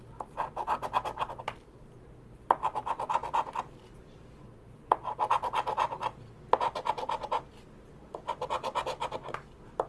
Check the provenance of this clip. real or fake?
real